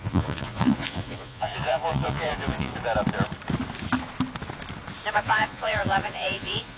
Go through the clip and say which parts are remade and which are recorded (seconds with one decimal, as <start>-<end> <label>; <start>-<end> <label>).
0.0-2.7 remade; 2.7-5.1 recorded; 5.1-6.8 remade